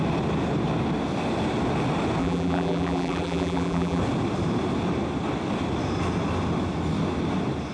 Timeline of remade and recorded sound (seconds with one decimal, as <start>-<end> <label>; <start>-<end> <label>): 0.0-2.2 recorded; 2.2-4.0 remade; 4.0-7.7 recorded